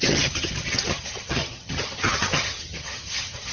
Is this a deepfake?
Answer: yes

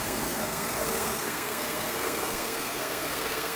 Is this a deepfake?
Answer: yes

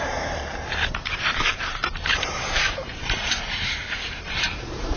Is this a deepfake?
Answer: yes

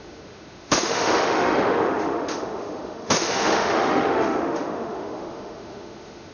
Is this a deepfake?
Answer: yes